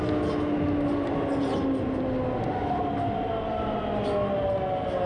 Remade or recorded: recorded